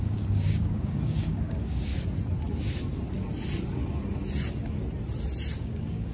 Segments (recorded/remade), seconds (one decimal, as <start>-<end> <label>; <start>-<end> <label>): 0.0-1.9 remade; 1.9-5.6 recorded; 5.6-6.1 remade